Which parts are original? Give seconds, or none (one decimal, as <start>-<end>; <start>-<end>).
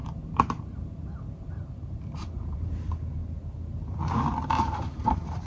3.2-4.1